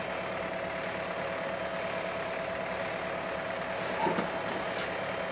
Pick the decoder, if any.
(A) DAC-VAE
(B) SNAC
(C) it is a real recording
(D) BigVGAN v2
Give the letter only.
C